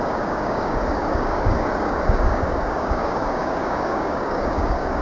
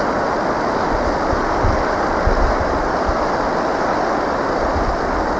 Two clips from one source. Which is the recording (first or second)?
second